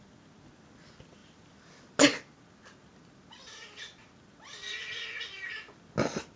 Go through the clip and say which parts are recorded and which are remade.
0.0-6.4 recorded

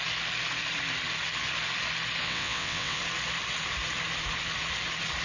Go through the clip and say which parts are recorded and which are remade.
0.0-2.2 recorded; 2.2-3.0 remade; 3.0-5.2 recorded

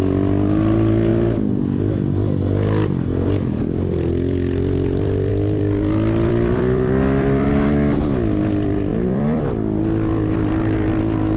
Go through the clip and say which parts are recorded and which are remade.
0.0-5.3 recorded; 5.3-7.5 remade; 7.5-8.9 recorded; 8.9-9.4 remade; 9.4-11.4 recorded

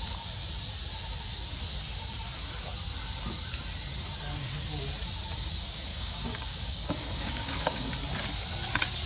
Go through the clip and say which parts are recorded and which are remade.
0.0-5.9 recorded; 5.9-7.9 remade; 7.9-9.1 recorded

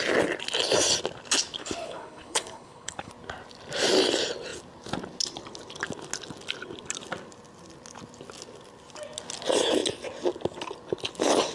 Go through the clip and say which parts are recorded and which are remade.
0.0-1.6 recorded; 1.6-3.1 remade; 3.1-11.5 recorded

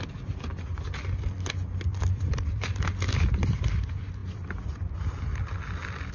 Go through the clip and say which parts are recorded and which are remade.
0.0-6.1 recorded